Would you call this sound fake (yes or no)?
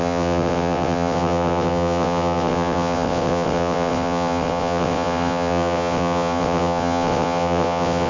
yes